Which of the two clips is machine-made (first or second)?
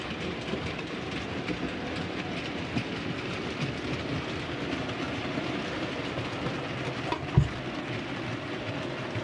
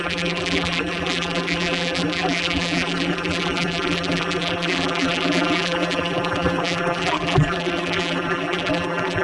second